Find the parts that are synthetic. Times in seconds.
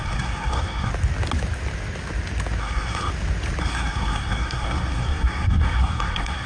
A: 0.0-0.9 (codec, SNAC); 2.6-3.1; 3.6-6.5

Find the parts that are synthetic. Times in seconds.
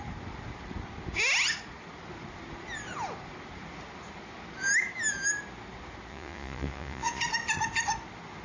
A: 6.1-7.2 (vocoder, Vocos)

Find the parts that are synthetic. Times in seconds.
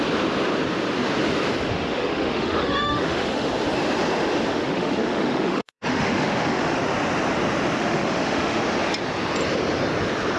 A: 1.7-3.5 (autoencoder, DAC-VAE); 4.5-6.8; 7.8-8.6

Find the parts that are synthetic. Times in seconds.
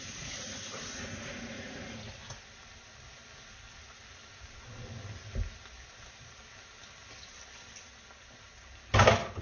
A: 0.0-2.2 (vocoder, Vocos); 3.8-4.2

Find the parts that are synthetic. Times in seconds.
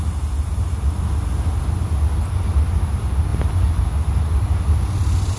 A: none